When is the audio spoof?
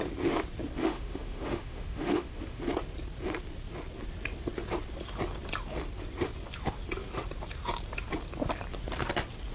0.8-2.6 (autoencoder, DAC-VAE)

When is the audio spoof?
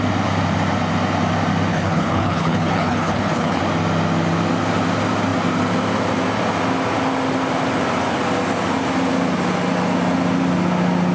1.7-3.6 (codec, HILCodec)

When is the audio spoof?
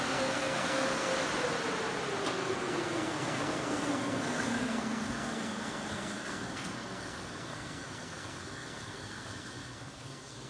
0.0-1.1 (codec, SNAC); 2.3-10.5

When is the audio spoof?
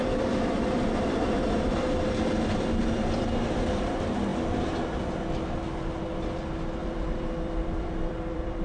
0.0-2.8 (vocoder, BigVGAN v2); 6.8-8.6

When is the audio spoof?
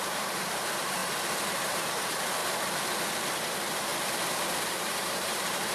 0.0-1.0 (vocoder, BigVGAN v2); 1.5-2.4; 3.3-3.9; 4.7-5.7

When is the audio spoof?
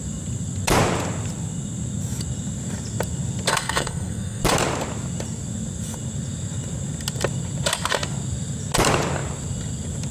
3.5-4.4 (codec, SNAC)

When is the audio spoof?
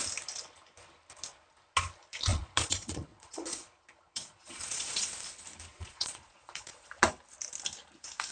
2.3-5.1 (vocoder, Vocos); 5.7-6.9